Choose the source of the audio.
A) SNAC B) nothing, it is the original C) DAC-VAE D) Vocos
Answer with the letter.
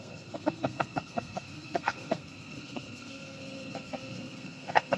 A